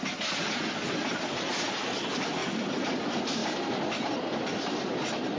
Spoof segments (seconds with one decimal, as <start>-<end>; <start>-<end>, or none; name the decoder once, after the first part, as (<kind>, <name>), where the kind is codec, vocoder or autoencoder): none